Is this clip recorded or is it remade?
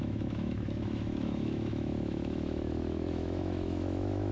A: remade